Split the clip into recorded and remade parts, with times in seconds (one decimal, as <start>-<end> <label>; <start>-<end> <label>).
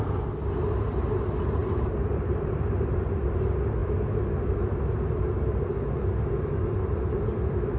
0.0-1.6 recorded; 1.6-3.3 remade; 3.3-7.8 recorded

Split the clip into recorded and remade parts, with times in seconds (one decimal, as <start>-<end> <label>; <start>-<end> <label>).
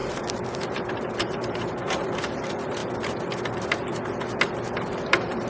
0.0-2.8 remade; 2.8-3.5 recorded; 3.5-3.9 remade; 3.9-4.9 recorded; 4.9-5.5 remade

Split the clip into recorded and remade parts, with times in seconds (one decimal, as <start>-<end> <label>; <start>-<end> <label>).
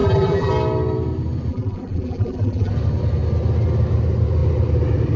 0.0-0.5 remade; 0.5-1.5 recorded; 1.5-2.7 remade; 2.7-5.2 recorded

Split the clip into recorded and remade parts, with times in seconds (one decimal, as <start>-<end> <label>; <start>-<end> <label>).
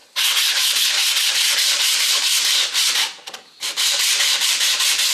0.0-1.3 recorded; 1.3-5.1 remade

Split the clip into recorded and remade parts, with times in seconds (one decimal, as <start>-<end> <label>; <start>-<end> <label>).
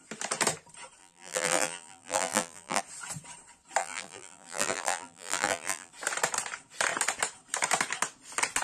0.0-1.0 recorded; 1.0-2.8 remade; 2.8-3.8 recorded; 3.8-5.9 remade; 5.9-8.6 recorded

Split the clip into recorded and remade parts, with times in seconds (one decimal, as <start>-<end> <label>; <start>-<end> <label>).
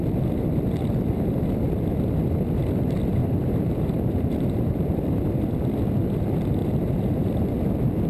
0.0-3.2 recorded; 3.2-5.3 remade; 5.3-6.6 recorded; 6.6-7.4 remade; 7.4-8.1 recorded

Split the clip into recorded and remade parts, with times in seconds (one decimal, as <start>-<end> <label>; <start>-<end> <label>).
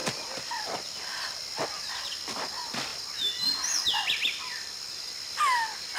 0.0-2.0 remade; 2.0-6.0 recorded